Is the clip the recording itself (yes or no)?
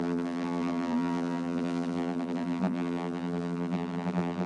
no